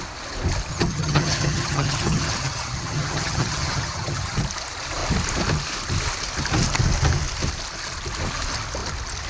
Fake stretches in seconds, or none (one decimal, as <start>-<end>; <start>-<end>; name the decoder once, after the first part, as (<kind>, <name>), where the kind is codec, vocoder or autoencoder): 0.7-4.4 (vocoder, HiFi-GAN)